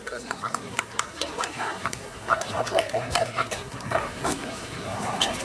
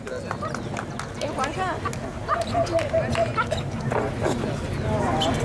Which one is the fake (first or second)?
first